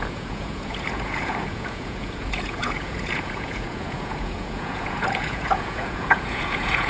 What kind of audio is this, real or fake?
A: fake